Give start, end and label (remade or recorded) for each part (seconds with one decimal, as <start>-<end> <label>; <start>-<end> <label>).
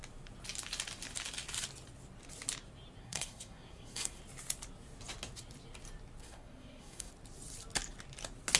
0.0-3.0 recorded; 3.0-4.2 remade; 4.2-6.2 recorded; 6.2-7.1 remade; 7.1-8.6 recorded